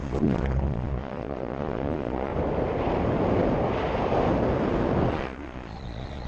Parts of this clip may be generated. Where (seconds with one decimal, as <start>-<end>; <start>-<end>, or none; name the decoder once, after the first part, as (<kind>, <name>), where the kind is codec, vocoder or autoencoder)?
0.0-2.3 (vocoder, Vocos); 5.1-6.3